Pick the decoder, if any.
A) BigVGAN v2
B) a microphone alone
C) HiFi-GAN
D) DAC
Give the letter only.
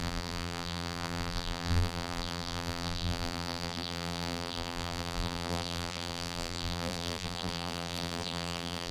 A